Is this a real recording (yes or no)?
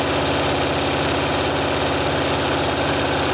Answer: yes